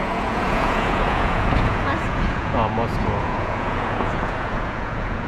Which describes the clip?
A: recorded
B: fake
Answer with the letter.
B